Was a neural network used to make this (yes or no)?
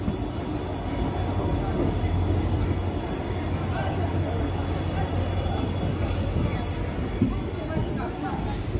no